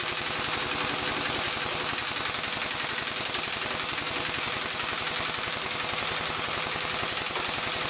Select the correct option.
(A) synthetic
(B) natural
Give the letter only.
B